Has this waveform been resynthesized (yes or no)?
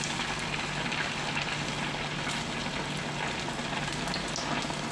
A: no